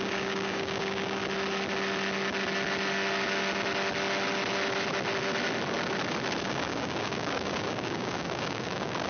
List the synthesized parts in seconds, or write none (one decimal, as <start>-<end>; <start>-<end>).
0.0-1.2; 6.4-9.1